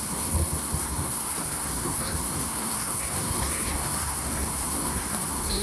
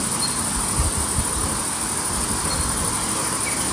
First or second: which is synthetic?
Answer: first